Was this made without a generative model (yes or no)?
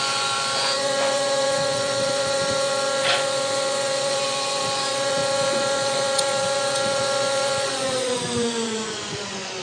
no